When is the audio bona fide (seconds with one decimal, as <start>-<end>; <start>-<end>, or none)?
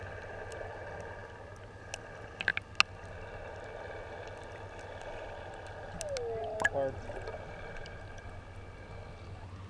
0.0-9.7